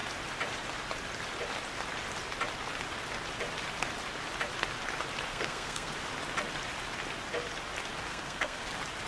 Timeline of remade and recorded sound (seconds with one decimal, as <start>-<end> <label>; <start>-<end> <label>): 0.0-5.3 recorded; 5.3-5.9 remade; 5.9-8.1 recorded; 8.1-8.6 remade; 8.6-9.1 recorded